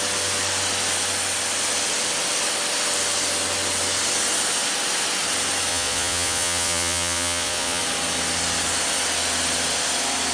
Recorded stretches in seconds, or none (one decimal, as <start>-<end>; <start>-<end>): 0.0-5.7; 7.8-10.3